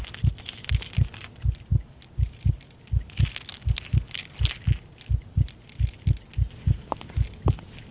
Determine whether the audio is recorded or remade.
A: recorded